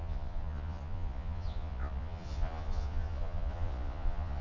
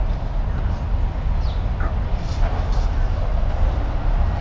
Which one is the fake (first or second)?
first